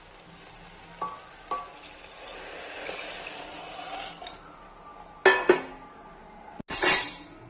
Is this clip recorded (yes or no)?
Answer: yes